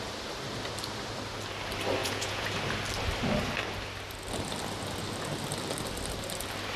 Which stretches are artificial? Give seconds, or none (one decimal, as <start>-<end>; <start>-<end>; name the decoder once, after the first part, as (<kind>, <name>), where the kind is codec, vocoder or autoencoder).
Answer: 2.0-2.5 (vocoder, Vocos)